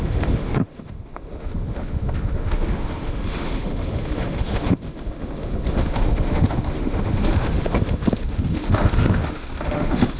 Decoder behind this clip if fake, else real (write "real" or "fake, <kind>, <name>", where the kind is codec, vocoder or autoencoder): fake, autoencoder, DAC-VAE